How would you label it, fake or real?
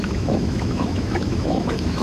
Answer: fake